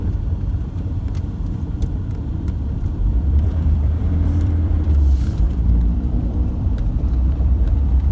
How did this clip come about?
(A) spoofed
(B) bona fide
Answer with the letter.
A